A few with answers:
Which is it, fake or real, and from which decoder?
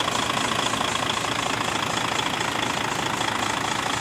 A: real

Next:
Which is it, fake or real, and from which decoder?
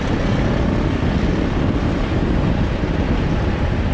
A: real